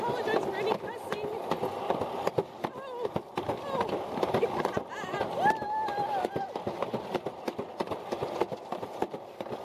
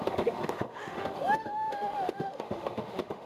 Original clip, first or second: first